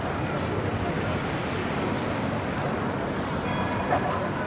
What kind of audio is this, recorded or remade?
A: recorded